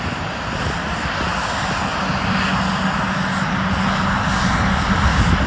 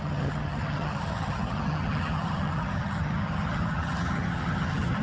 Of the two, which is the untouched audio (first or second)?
first